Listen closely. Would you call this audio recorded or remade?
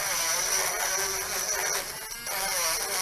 recorded